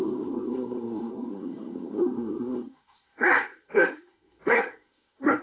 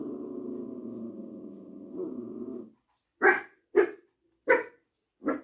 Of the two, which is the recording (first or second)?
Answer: second